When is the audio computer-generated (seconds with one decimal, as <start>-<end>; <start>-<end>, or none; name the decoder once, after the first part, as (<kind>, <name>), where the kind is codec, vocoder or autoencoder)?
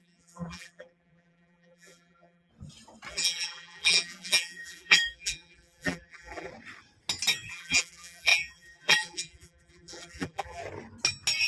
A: 0.0-2.5 (vocoder, BigVGAN v2); 3.1-6.5; 7.5-10.6